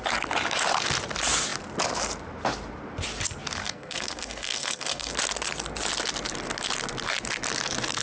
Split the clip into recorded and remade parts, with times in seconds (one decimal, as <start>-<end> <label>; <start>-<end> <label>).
0.0-3.6 recorded; 3.6-5.1 remade; 5.1-8.0 recorded